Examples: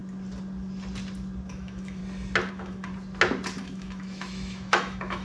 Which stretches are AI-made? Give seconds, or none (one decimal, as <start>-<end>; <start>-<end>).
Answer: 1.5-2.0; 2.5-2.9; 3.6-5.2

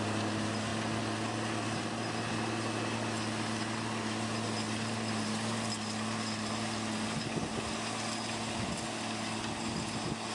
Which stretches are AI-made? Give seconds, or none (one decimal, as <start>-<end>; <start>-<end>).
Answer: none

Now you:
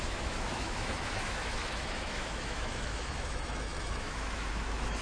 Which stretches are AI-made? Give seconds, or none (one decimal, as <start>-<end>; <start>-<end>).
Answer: 0.0-5.0

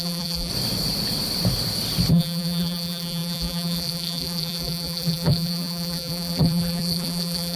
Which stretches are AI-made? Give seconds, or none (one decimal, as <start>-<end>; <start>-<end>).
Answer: 0.0-0.5; 2.1-7.6

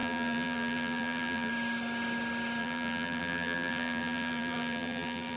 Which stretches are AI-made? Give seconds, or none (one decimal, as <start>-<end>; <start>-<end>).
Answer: 0.0-1.5; 2.6-5.4

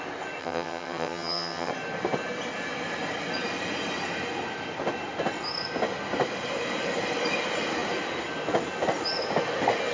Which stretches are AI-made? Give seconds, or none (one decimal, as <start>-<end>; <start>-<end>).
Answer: 0.4-1.7